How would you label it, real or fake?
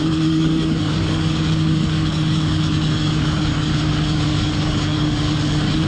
fake